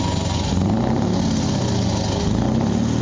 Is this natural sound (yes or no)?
yes